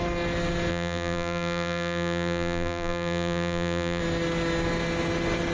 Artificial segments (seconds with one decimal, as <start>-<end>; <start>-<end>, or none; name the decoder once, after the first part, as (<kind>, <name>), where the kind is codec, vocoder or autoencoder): 0.7-4.0 (vocoder, BigVGAN v2)